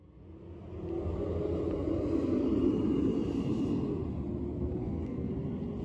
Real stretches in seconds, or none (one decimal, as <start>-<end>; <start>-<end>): 0.0-4.7; 5.3-5.8